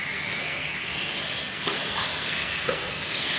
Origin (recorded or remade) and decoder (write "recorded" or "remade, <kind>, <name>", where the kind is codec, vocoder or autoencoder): remade, codec, SNAC